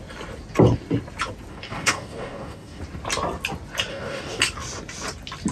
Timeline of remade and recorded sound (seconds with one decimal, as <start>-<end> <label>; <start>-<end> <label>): 0.0-1.5 recorded; 1.5-2.8 remade; 2.8-3.9 recorded; 3.9-4.4 remade; 4.4-5.5 recorded